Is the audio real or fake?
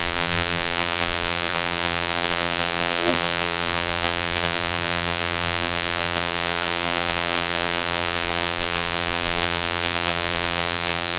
fake